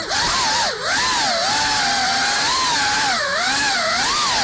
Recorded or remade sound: recorded